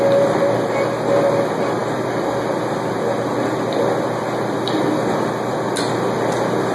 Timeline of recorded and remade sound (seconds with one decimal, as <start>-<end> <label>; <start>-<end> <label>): 0.0-6.7 recorded